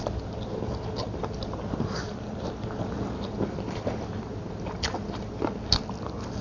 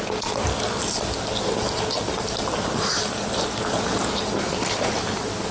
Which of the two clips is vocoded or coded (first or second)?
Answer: first